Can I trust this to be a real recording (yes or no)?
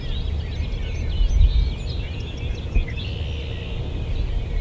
yes